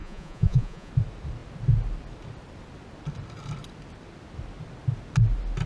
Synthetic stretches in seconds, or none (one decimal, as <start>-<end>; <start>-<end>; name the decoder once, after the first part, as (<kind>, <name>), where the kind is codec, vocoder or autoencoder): 0.0-0.9 (vocoder, Vocos)